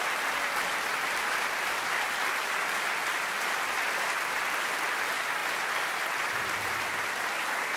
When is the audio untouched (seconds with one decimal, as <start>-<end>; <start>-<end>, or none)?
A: 0.0-7.8